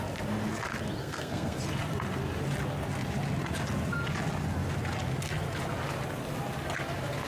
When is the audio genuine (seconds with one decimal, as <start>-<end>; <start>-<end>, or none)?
0.0-1.0; 1.6-7.3